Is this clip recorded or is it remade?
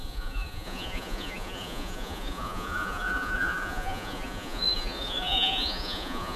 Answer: remade